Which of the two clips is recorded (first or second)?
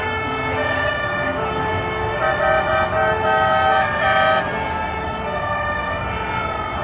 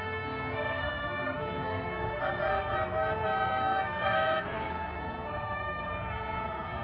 first